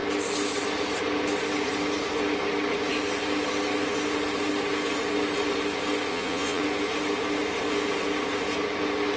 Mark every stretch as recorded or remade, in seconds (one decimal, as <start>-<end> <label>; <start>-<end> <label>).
0.0-6.1 recorded; 6.1-6.6 remade; 6.6-9.2 recorded